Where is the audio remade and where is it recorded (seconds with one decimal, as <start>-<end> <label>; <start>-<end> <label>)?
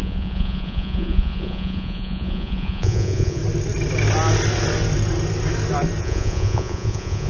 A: 0.0-3.4 remade; 3.4-6.0 recorded; 6.0-7.3 remade